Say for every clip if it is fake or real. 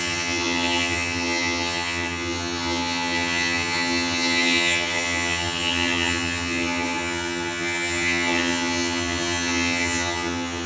fake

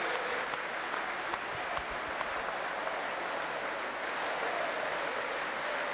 real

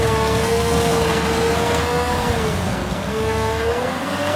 fake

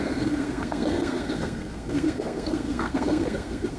fake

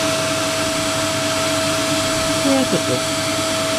real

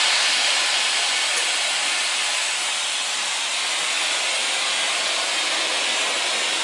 real